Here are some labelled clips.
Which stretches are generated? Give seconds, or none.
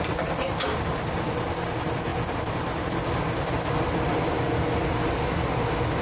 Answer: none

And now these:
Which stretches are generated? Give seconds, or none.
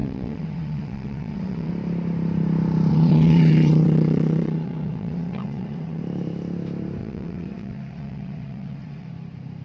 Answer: 0.0-1.7; 2.9-6.0; 7.0-9.1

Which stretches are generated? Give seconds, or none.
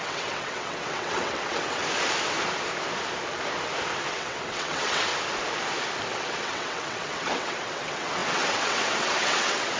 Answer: 0.0-1.8; 4.1-5.1; 6.1-9.8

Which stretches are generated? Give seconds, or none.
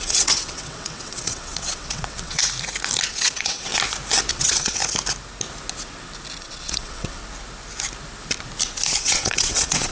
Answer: 0.0-2.4; 3.1-3.7; 4.3-4.8; 6.4-7.2; 9.0-9.9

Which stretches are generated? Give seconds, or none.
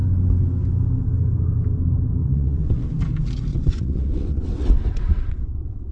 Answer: 2.2-2.8; 3.5-5.9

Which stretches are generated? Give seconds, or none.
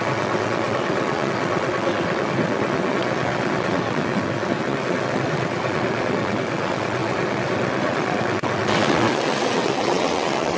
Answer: 0.0-10.6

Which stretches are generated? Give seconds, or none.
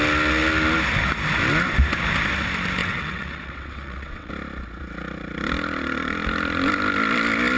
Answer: 2.8-4.3